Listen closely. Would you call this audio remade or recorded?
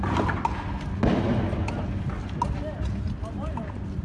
recorded